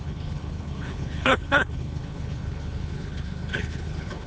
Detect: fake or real fake